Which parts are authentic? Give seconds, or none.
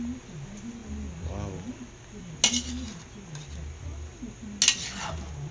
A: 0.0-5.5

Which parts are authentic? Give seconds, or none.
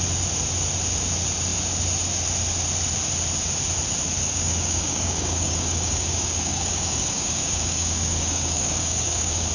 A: 0.0-4.2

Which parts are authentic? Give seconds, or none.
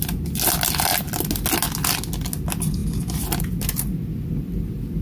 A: 0.0-5.0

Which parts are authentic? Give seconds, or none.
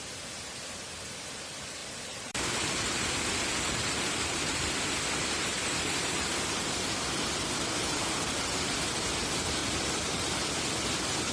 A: 0.0-1.8; 4.8-9.6; 10.3-11.3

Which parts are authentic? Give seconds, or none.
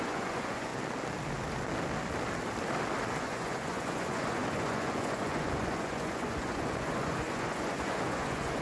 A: 0.7-3.2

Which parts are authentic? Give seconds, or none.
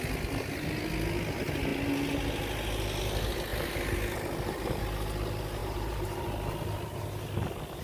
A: 0.0-5.6; 6.2-7.8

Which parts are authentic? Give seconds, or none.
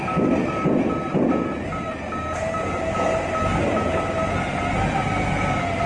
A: 0.0-5.9